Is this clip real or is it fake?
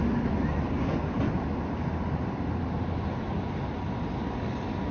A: real